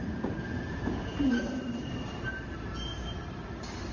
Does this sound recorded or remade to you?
remade